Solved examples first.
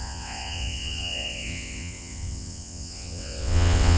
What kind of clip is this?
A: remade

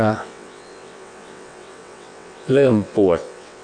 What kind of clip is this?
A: remade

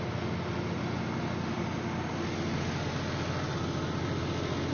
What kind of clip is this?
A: recorded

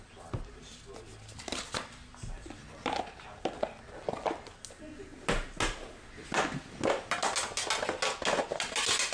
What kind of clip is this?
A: recorded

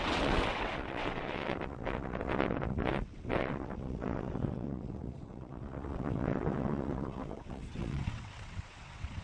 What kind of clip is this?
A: remade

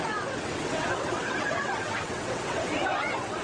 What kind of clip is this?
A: remade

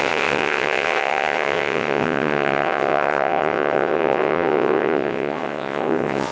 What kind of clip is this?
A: remade